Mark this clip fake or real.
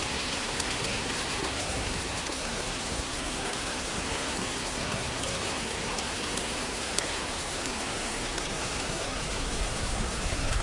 fake